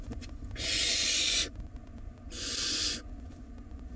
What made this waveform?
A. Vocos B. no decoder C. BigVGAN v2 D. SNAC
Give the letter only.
A